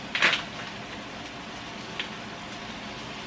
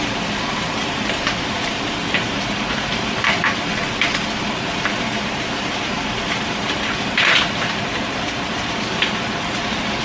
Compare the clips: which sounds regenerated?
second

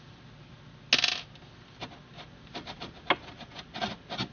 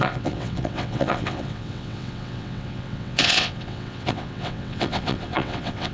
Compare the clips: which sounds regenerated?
second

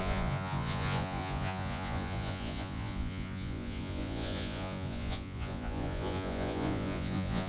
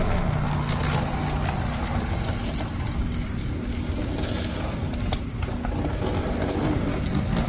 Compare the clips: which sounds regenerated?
first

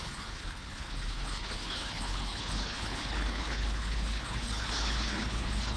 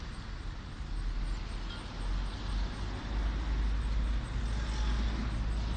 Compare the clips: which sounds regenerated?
first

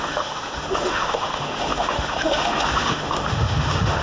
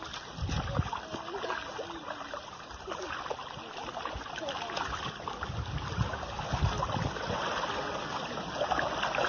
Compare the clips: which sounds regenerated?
first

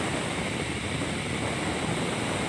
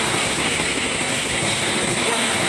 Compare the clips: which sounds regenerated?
second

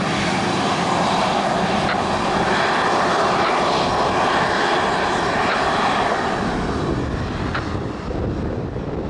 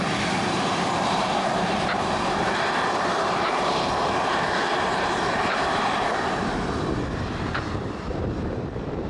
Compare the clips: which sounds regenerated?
second